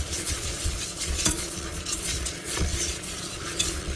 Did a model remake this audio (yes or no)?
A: yes